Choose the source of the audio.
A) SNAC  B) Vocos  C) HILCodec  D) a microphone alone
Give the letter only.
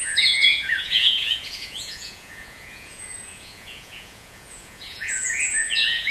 B